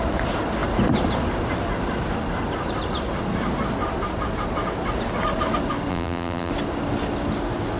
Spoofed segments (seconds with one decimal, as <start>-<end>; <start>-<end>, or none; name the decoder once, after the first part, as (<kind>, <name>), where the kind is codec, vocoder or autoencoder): 5.9-6.5 (vocoder, BigVGAN v2)